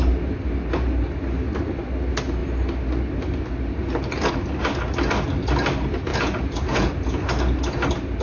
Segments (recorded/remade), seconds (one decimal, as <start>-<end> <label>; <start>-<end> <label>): 0.0-6.1 recorded; 6.1-7.1 remade; 7.1-8.2 recorded